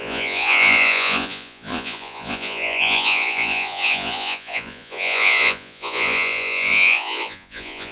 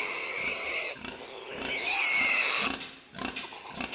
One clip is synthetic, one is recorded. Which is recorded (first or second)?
second